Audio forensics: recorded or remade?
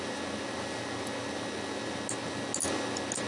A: recorded